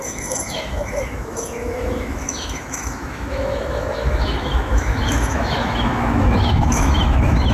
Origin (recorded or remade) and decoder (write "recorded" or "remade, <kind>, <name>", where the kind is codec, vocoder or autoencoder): remade, autoencoder, DAC-VAE